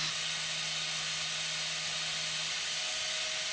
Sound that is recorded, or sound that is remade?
recorded